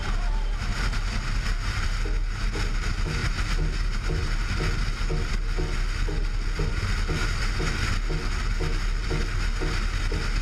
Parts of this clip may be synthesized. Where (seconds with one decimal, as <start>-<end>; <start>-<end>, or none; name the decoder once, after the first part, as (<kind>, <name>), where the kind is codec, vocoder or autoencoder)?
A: none